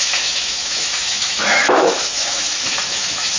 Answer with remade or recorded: remade